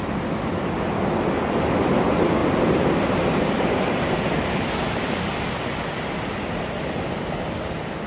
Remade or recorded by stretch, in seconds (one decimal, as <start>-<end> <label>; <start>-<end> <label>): 0.0-2.4 recorded; 2.4-5.6 remade; 5.6-8.1 recorded